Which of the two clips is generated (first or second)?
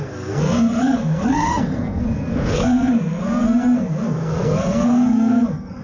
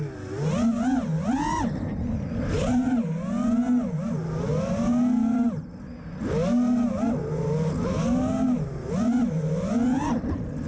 first